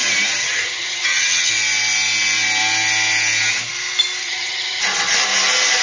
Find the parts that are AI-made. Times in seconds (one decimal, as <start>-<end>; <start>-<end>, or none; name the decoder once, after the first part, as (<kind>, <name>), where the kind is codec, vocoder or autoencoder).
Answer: 0.4-1.5 (vocoder, HiFi-GAN); 4.2-4.8